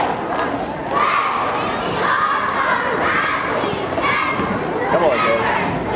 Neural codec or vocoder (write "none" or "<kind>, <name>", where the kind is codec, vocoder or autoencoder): none